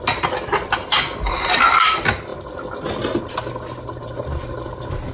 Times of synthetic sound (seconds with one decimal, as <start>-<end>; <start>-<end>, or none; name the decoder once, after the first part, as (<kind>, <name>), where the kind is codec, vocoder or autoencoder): none